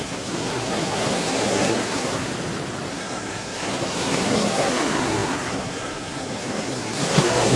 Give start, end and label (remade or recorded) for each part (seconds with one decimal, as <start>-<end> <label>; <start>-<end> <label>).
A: 0.0-2.3 remade; 2.3-2.9 recorded; 2.9-7.6 remade